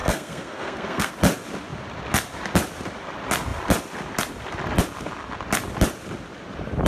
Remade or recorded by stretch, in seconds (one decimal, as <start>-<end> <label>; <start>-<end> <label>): 0.0-1.1 remade; 1.1-6.9 recorded